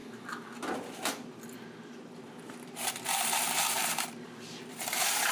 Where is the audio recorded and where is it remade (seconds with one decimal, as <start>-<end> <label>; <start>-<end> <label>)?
0.0-2.5 recorded; 2.5-5.3 remade